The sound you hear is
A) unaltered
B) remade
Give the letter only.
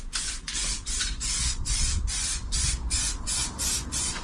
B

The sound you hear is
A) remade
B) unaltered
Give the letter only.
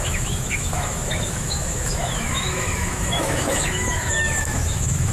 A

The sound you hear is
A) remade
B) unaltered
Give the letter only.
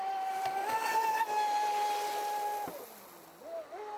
B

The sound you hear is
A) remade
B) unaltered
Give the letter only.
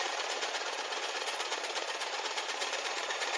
A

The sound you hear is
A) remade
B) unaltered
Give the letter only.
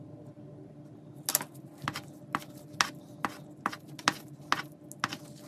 B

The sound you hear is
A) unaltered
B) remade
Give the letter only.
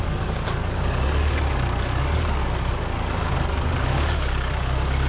B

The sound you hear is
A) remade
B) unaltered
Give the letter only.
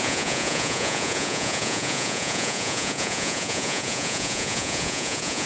A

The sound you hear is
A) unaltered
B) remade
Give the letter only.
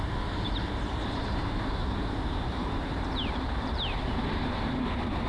B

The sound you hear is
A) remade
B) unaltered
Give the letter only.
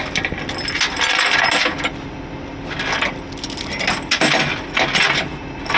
B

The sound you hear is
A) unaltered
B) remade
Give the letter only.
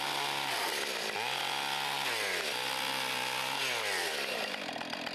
A